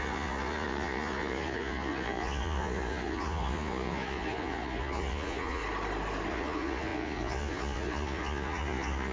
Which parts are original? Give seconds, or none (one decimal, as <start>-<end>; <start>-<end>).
5.6-6.3